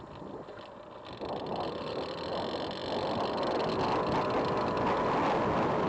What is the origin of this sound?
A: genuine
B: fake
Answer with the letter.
A